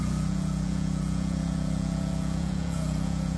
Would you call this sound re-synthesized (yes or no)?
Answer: yes